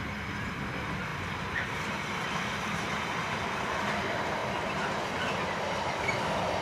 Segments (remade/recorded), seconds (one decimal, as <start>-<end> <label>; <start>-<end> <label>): 0.0-1.1 recorded; 1.1-1.7 remade; 1.7-4.4 recorded; 4.4-5.1 remade; 5.1-6.6 recorded